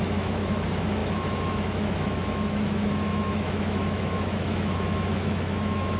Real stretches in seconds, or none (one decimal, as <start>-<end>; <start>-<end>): none